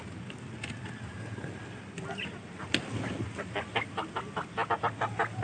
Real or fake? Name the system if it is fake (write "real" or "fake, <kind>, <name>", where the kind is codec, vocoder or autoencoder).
real